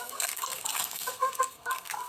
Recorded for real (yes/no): no